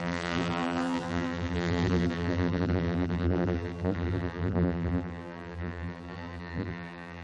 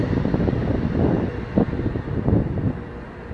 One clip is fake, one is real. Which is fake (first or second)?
first